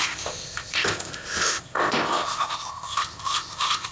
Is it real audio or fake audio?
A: fake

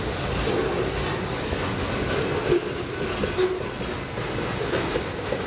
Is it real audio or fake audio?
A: real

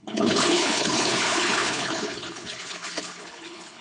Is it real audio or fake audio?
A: fake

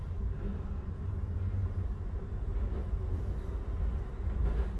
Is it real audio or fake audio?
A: real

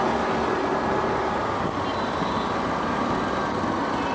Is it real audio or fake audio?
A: real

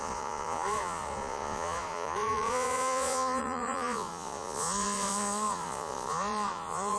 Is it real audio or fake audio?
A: fake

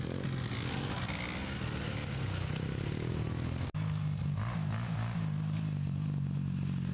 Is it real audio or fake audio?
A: real